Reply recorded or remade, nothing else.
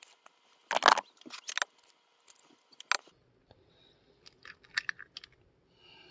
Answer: recorded